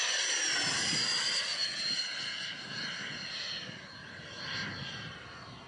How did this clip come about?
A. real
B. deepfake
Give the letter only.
A